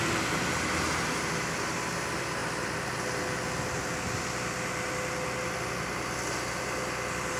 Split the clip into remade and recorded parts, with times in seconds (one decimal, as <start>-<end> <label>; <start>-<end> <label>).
0.0-7.4 recorded